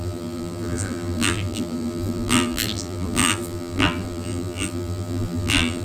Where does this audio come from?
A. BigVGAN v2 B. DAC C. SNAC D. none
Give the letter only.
A